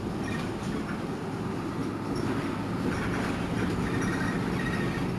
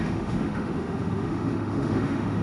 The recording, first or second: first